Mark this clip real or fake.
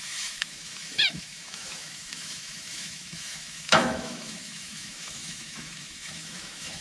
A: fake